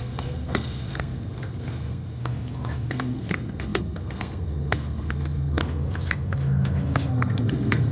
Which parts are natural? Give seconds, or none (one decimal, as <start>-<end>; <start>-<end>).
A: 2.2-2.9; 5.6-7.1